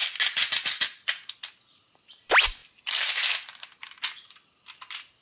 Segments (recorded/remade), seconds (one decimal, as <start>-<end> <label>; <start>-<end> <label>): 0.0-5.2 recorded